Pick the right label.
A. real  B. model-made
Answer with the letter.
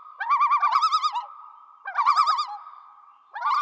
A